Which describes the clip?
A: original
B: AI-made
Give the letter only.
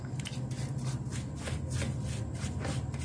A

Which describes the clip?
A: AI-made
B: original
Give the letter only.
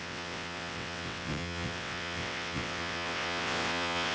A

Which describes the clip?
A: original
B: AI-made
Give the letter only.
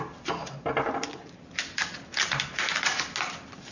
A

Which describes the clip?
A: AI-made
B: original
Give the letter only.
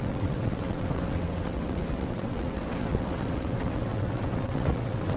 A